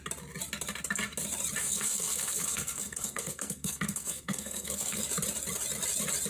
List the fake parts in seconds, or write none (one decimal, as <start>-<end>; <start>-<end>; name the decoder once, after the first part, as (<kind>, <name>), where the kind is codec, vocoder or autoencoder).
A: 1.6-5.0 (codec, SNAC)